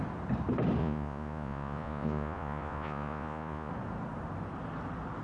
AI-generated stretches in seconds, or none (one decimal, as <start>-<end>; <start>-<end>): 0.8-3.7